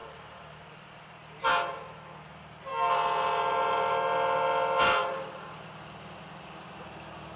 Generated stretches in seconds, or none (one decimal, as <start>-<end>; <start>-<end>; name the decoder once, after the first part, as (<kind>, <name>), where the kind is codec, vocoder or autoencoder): none